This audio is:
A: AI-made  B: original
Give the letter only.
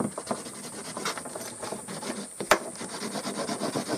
B